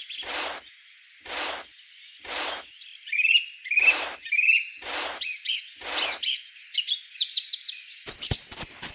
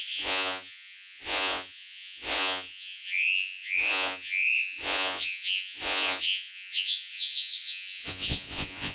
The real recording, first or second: first